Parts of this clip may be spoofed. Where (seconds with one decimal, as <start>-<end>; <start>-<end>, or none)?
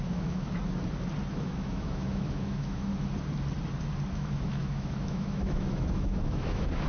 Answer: 0.0-0.6; 1.3-2.9; 4.1-6.9